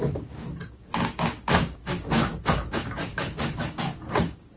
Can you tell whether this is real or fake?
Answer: fake